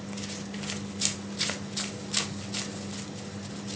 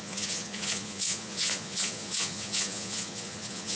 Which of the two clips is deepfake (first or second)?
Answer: second